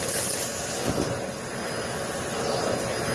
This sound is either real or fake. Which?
real